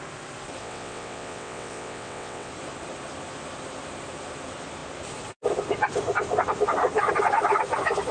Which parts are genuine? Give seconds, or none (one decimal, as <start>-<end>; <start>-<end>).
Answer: 0.0-0.6; 2.5-8.1